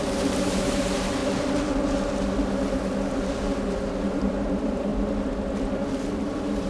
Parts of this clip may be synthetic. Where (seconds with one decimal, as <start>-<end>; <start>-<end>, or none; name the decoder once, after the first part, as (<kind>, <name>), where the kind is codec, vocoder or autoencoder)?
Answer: 0.0-1.2 (vocoder, BigVGAN v2); 4.1-4.9